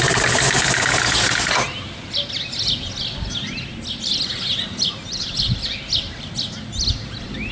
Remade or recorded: recorded